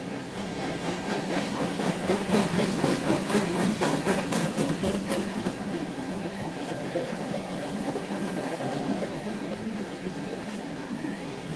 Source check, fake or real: fake